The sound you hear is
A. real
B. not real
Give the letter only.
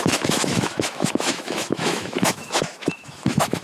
B